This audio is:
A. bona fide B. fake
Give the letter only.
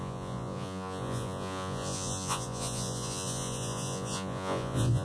B